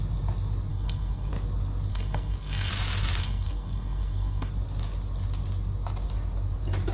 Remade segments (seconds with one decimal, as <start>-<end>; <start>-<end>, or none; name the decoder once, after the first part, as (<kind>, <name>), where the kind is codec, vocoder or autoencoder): 0.7-1.3 (codec, SNAC); 1.9-2.7; 3.2-4.5